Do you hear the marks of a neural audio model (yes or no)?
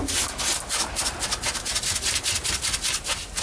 no